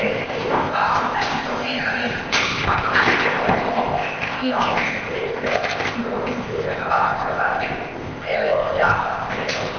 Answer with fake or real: fake